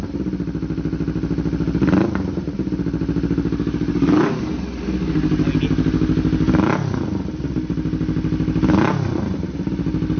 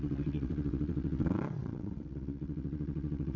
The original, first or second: first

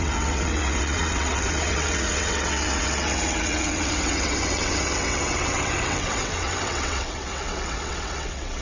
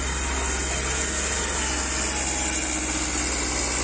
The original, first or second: second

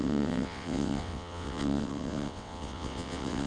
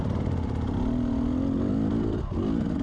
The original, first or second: second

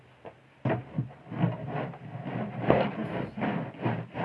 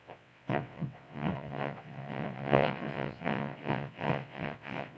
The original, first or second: first